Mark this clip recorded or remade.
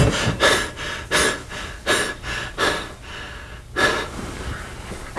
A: recorded